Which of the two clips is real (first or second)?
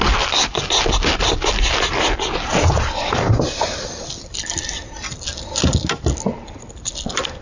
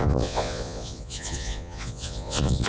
first